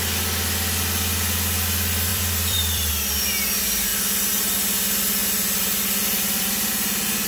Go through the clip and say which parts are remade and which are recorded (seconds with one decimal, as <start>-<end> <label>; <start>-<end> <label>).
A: 0.0-2.1 recorded; 2.1-2.9 remade; 2.9-3.9 recorded; 3.9-4.6 remade; 4.6-5.2 recorded; 5.2-6.5 remade; 6.5-7.3 recorded